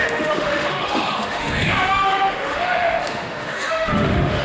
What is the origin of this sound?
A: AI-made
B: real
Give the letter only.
A